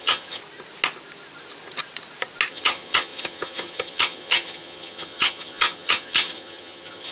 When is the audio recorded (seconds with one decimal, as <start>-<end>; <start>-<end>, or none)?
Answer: 0.4-2.5